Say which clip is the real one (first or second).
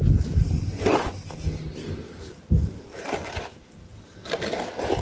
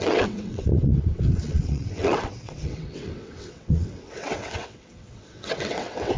first